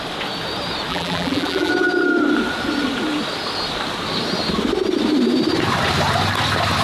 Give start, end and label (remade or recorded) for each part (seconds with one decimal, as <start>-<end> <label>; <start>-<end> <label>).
0.0-0.9 recorded; 0.9-1.7 remade; 1.7-6.8 recorded